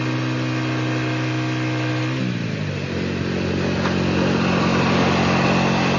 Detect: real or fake real